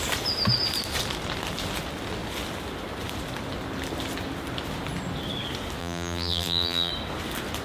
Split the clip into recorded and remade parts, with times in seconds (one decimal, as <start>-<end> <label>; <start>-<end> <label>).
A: 0.0-5.8 recorded; 5.8-6.9 remade; 6.9-7.6 recorded